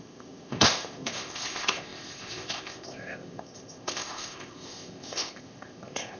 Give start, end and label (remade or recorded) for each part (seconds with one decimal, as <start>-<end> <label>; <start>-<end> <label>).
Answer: 0.0-6.2 remade

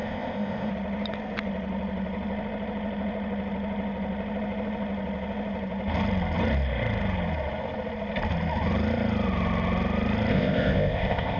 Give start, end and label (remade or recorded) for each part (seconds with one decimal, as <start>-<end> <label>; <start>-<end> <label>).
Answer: 0.0-0.7 remade; 0.7-10.3 recorded; 10.3-11.4 remade

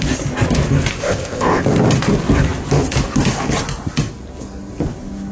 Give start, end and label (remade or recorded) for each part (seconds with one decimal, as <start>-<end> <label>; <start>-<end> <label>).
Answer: 0.0-1.0 recorded; 1.0-1.6 remade; 1.6-5.3 recorded